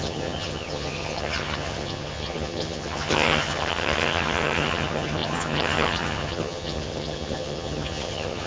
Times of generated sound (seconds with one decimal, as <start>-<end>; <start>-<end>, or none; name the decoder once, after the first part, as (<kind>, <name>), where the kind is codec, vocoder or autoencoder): 0.0-8.5 (vocoder, HiFi-GAN)

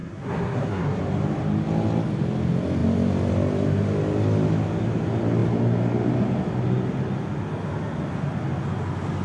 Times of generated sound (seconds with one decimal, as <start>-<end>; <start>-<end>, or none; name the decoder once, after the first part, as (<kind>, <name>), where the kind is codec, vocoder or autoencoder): 0.0-1.0 (codec, SNAC)

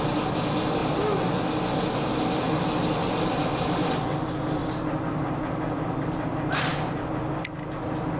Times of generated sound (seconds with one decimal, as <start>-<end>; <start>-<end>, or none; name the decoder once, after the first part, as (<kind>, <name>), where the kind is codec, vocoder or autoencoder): none

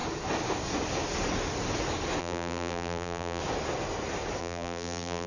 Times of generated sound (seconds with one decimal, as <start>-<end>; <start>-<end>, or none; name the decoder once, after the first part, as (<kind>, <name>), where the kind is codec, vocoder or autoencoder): 2.2-3.4 (vocoder, BigVGAN v2); 4.4-5.3

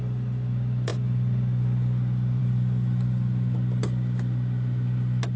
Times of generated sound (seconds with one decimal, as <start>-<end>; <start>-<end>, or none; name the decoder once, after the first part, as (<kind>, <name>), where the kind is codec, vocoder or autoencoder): none

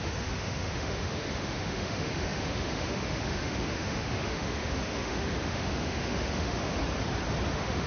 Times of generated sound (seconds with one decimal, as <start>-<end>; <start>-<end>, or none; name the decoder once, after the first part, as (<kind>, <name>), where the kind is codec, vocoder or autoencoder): 0.0-6.8 (autoencoder, DAC-VAE); 7.5-7.9